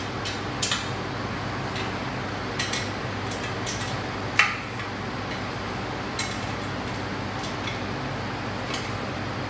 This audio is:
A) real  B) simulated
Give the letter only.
A